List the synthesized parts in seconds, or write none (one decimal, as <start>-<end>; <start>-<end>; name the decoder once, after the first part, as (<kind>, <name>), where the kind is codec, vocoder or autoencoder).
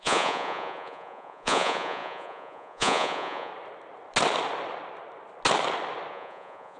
0.0-3.5 (vocoder, Vocos); 6.1-6.8